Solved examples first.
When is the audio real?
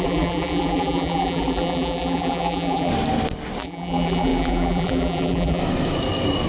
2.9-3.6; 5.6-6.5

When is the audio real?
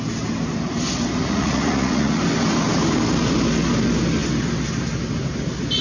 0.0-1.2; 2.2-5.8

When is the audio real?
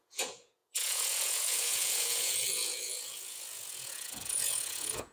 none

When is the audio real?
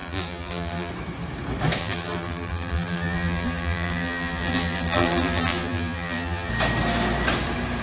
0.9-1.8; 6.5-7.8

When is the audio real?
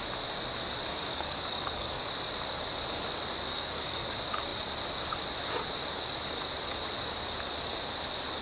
0.0-1.1; 2.0-3.5; 4.1-8.4